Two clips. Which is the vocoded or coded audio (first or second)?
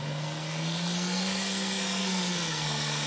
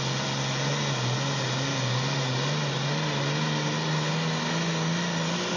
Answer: first